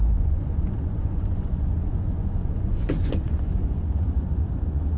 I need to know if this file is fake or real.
fake